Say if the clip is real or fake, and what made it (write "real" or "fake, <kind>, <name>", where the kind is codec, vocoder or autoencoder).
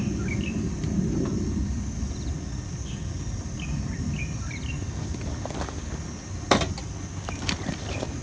fake, vocoder, BigVGAN v2